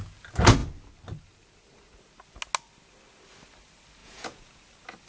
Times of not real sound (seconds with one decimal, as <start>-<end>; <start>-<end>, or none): 4.0-4.6